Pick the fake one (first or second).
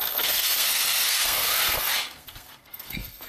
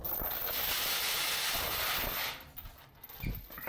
first